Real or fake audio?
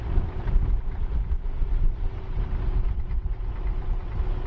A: real